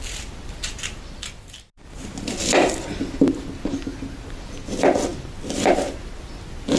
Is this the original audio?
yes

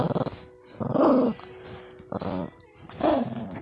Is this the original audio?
yes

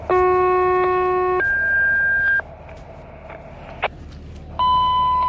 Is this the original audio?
yes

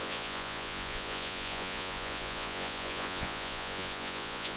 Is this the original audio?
no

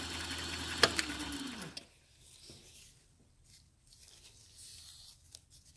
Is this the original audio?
yes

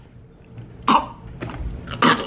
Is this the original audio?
yes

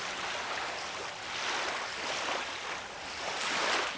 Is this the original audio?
yes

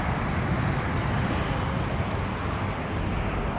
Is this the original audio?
yes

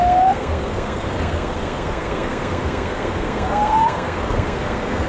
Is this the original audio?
no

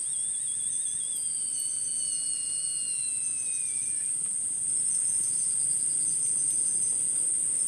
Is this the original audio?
yes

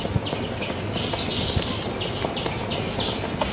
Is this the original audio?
yes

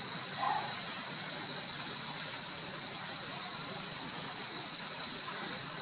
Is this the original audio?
no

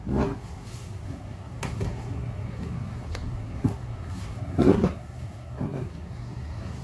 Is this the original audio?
no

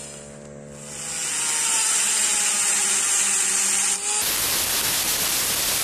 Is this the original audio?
yes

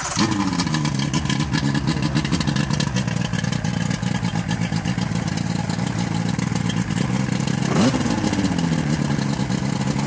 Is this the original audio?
yes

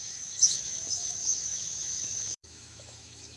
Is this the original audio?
no